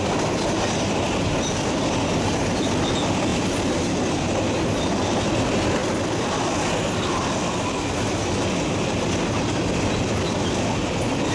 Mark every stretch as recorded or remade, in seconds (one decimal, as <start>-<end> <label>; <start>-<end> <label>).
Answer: 0.0-11.3 recorded

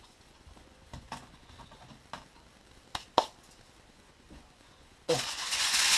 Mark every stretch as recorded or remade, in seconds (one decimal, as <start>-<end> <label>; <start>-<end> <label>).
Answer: 0.0-1.9 remade; 1.9-3.9 recorded; 3.9-6.0 remade

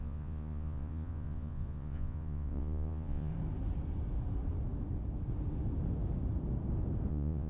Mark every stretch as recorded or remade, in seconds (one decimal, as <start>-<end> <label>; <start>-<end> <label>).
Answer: 0.0-3.3 remade; 3.3-7.1 recorded; 7.1-7.5 remade

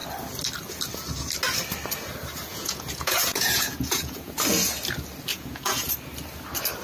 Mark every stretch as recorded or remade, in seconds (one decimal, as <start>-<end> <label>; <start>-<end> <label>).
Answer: 0.0-2.5 recorded; 2.5-4.3 remade; 4.3-5.3 recorded; 5.3-5.9 remade; 5.9-6.8 recorded

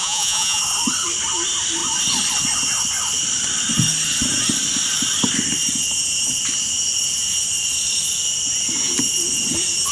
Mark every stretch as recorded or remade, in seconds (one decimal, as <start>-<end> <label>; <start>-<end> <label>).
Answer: 0.0-0.6 remade; 0.6-9.9 recorded